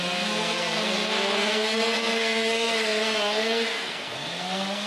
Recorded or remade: remade